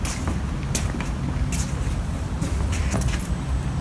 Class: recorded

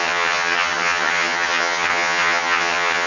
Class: remade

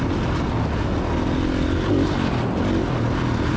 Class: recorded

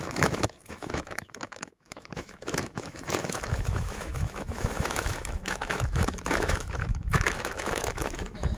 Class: remade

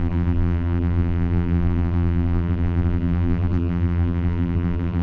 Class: remade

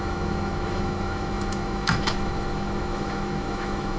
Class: remade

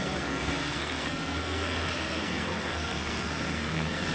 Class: remade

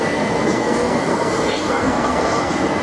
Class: remade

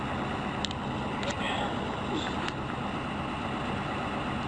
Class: recorded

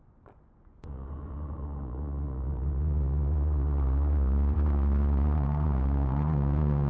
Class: remade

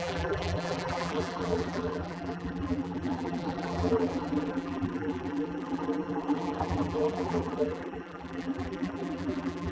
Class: remade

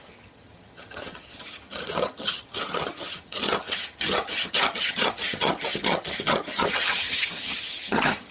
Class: remade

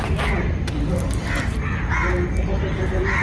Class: recorded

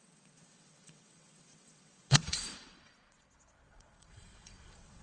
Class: remade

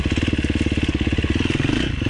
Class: recorded